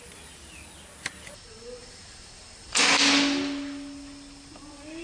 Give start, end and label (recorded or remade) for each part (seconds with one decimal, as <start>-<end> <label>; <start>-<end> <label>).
0.0-1.8 recorded; 1.8-2.8 remade; 2.8-5.0 recorded